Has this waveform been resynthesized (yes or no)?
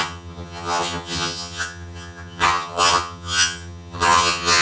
yes